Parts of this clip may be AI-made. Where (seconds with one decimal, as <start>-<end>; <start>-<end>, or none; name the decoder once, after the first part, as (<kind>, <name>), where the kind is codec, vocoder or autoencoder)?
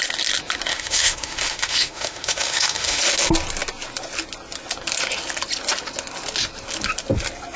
0.7-3.0 (autoencoder, DAC-VAE)